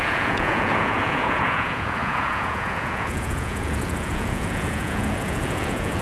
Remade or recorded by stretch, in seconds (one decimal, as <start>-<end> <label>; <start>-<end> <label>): 0.0-6.0 remade